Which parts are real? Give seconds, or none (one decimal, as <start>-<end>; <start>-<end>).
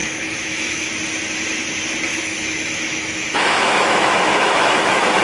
0.9-2.1